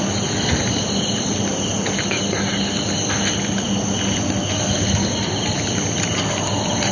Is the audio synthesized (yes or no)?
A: no